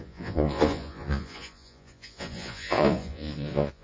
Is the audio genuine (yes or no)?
no